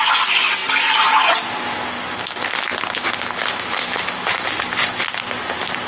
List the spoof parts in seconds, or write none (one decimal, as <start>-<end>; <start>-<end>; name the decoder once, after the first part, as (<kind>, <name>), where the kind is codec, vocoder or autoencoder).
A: none

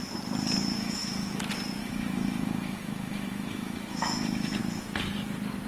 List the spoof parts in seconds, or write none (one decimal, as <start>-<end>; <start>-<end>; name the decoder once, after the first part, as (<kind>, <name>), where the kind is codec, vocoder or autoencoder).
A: 0.8-1.4 (autoencoder, DAC-VAE); 1.8-4.6

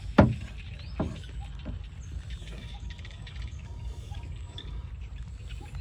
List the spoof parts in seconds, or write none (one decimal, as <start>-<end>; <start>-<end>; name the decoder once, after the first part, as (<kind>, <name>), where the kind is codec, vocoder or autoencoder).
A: 2.4-4.9 (codec, DAC)